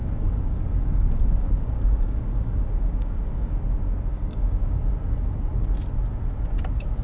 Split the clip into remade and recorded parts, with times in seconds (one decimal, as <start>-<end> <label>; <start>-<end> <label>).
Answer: 0.0-3.6 remade; 3.6-4.1 recorded; 4.1-4.8 remade; 4.8-7.0 recorded